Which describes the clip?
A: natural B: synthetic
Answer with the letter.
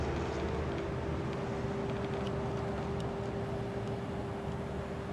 A